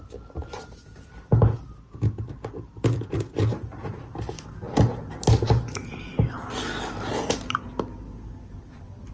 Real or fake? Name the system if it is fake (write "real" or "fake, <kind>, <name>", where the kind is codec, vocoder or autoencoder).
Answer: real